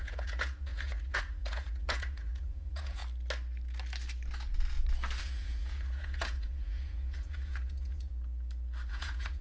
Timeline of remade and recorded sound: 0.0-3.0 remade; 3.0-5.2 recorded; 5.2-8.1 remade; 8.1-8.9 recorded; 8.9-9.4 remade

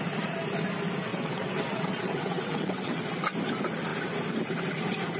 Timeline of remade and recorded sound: 0.0-1.1 recorded; 1.1-3.1 remade; 3.1-5.2 recorded

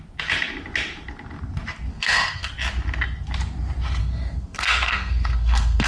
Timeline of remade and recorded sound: 0.0-1.9 recorded; 1.9-2.5 remade; 2.5-4.0 recorded; 4.0-5.9 remade

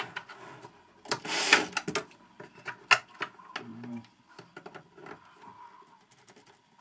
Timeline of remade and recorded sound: 0.0-3.7 recorded; 3.7-4.2 remade; 4.2-6.8 recorded

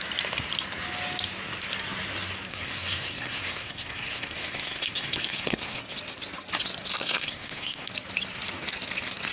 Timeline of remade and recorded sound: 0.0-2.5 recorded; 2.5-5.8 remade; 5.8-7.0 recorded; 7.0-7.9 remade; 7.9-9.3 recorded

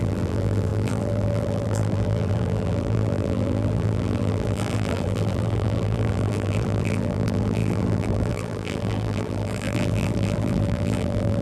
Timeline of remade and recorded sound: 0.0-11.4 remade

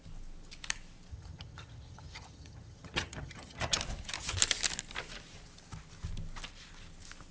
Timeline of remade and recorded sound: 0.0-1.1 recorded; 1.1-3.8 remade; 3.8-7.3 recorded